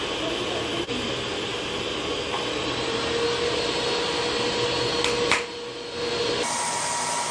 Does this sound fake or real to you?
real